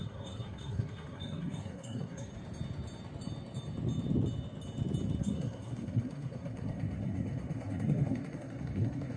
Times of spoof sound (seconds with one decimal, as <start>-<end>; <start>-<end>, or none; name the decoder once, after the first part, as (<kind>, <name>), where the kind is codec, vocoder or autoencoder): 0.0-2.3 (codec, SNAC); 5.2-9.2